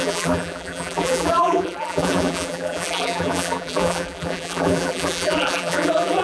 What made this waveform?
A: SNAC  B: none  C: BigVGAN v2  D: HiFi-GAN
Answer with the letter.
C